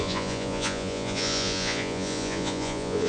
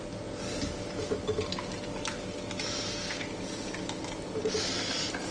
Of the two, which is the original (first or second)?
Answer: second